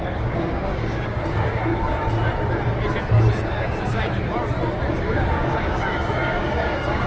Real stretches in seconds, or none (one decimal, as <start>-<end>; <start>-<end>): 1.7-3.3; 4.2-4.9